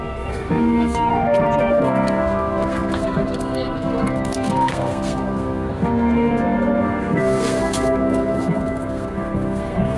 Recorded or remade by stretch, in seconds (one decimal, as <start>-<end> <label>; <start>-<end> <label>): 0.0-1.1 remade; 1.1-1.7 recorded; 1.7-10.0 remade